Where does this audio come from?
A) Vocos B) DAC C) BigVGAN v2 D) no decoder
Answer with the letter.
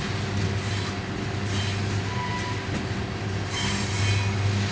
D